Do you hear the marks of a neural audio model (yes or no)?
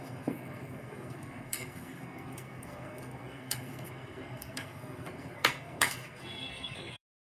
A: yes